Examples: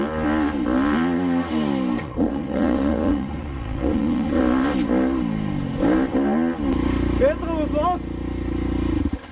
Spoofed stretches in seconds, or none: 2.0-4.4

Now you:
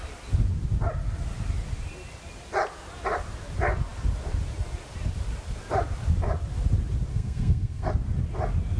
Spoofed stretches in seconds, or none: 7.1-7.9

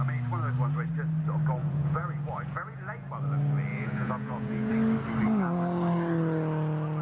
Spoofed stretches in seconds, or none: 1.6-3.1; 3.7-4.7